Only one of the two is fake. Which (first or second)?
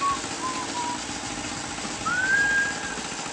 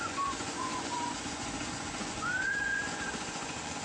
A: second